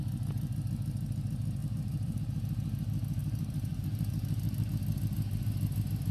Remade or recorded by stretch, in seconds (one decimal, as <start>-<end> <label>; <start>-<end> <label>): 0.0-1.6 recorded; 1.6-2.2 remade; 2.2-3.2 recorded; 3.2-4.7 remade; 4.7-6.1 recorded